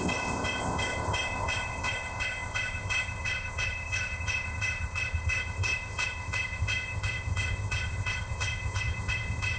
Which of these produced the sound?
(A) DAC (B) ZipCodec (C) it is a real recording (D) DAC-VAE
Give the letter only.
B